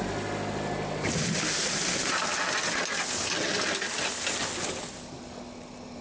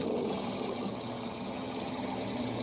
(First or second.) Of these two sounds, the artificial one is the second